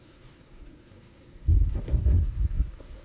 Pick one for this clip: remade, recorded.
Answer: remade